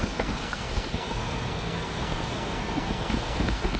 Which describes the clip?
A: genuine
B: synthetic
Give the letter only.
B